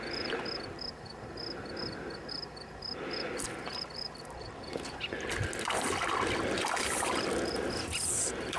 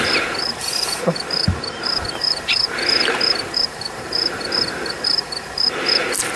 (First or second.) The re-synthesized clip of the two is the second